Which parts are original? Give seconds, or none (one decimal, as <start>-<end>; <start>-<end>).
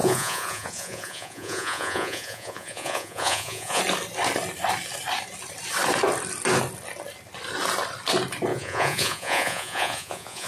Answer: 3.8-8.5